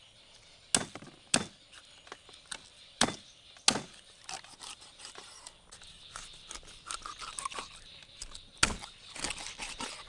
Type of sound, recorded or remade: recorded